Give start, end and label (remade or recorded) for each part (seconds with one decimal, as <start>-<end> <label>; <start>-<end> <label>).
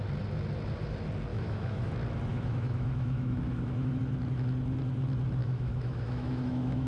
0.0-1.3 recorded; 1.3-1.9 remade; 1.9-2.3 recorded; 2.3-4.0 remade; 4.0-5.4 recorded; 5.4-6.9 remade